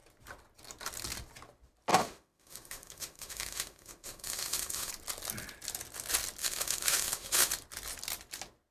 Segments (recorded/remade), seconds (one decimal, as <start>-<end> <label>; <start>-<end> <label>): 0.0-1.9 recorded; 1.9-4.9 remade; 4.9-6.4 recorded; 6.4-7.5 remade; 7.5-8.7 recorded